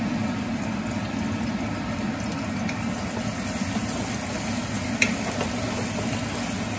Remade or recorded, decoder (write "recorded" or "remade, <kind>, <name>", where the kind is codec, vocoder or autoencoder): recorded